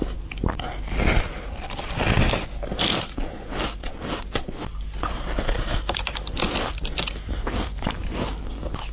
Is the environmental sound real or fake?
real